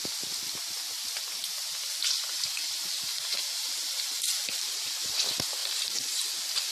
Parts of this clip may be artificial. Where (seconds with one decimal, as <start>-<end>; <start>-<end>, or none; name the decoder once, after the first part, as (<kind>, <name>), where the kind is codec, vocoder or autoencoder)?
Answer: 3.3-4.9 (vocoder, BigVGAN v2); 5.6-6.7